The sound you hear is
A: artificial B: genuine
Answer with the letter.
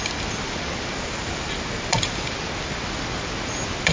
B